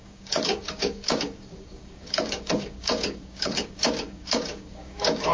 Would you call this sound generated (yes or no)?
yes